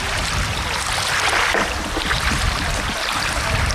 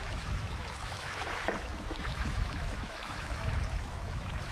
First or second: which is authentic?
first